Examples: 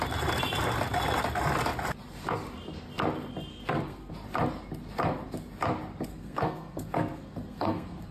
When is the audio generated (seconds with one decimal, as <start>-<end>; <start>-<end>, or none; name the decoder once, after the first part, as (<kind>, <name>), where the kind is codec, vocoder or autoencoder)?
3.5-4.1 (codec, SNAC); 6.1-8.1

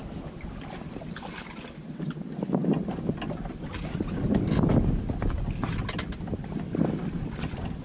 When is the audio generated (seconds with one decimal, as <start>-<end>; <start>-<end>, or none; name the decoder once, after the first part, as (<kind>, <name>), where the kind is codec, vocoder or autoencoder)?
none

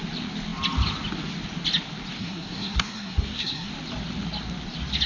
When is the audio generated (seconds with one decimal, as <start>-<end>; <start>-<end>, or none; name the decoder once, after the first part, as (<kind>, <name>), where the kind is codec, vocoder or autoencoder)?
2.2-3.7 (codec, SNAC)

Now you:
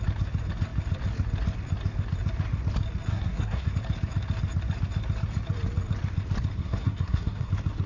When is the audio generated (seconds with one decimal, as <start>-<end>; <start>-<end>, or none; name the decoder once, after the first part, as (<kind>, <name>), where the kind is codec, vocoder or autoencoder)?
3.1-3.7 (codec, SNAC); 6.6-7.5